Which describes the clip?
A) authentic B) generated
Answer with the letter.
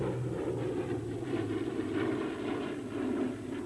A